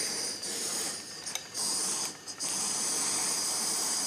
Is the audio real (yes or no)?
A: no